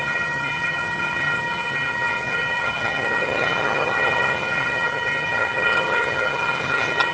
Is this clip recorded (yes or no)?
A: no